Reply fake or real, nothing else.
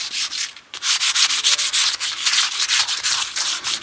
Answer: real